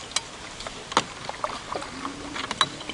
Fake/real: real